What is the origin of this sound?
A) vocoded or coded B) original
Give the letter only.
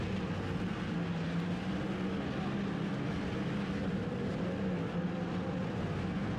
B